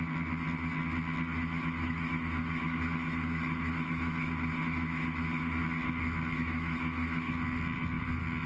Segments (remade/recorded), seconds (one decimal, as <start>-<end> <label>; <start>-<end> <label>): 0.0-1.3 recorded; 1.3-5.6 remade; 5.6-6.4 recorded; 6.4-7.3 remade; 7.3-8.5 recorded